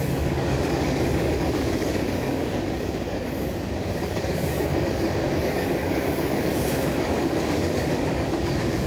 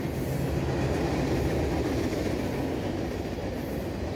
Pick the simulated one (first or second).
first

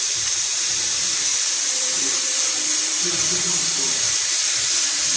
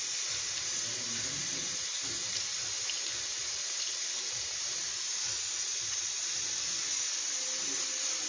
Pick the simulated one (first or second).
first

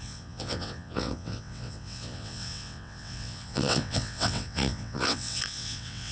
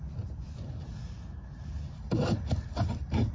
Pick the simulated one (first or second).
first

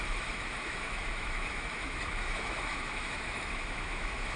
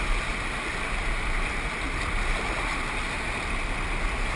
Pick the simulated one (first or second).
first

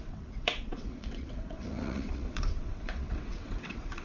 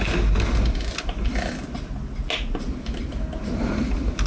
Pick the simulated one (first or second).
first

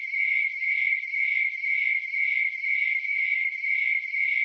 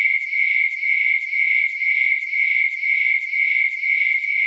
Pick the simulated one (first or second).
first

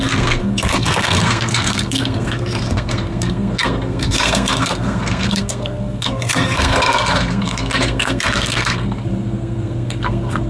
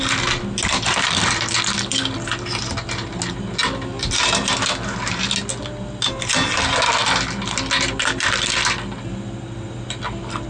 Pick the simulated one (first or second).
first